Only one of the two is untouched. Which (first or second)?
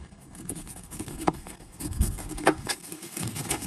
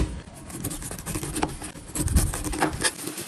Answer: second